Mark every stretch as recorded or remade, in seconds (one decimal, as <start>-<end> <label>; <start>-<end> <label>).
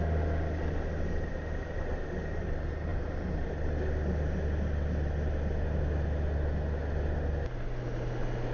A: 0.0-2.9 recorded; 2.9-3.5 remade; 3.5-8.5 recorded